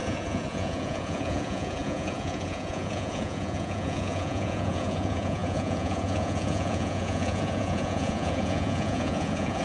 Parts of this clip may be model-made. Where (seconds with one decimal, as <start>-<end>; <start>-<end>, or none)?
0.0-9.6